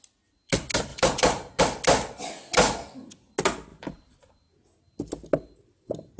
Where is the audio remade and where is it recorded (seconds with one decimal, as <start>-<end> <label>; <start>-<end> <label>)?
0.0-0.9 recorded; 0.9-1.6 remade; 1.6-3.7 recorded; 3.7-4.3 remade; 4.3-6.2 recorded